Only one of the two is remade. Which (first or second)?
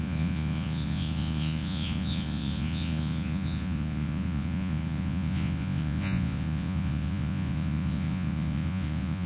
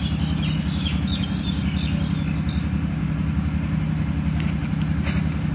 first